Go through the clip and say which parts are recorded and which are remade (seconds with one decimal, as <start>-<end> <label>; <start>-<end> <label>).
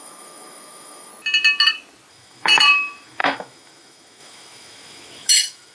0.0-1.1 remade; 1.1-2.1 recorded; 2.1-5.7 remade